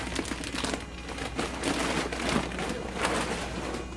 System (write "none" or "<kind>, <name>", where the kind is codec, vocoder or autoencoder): none